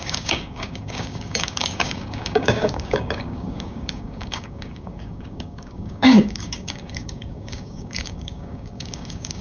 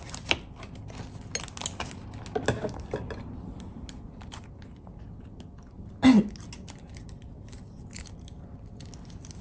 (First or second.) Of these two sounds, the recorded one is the second